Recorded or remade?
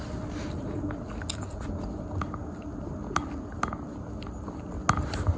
recorded